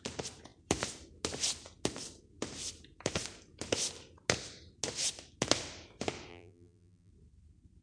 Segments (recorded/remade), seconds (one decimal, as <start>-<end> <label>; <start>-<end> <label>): 0.0-6.3 recorded; 6.3-7.1 remade; 7.1-7.8 recorded